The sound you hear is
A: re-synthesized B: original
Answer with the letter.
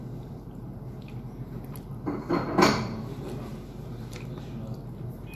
B